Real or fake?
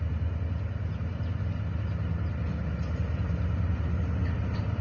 real